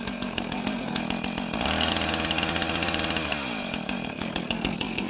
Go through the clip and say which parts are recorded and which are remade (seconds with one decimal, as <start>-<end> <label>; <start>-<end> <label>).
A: 0.0-1.0 remade; 1.0-4.1 recorded; 4.1-5.1 remade